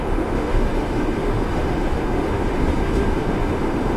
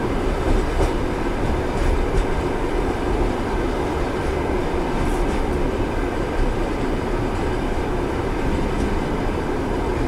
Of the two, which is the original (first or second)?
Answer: second